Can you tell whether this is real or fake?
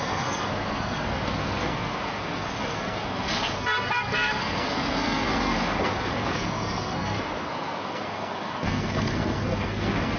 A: fake